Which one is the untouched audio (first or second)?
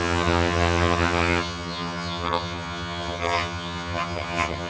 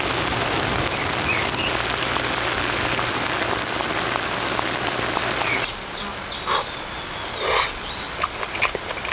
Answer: second